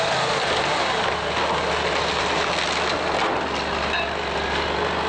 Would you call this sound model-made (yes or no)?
no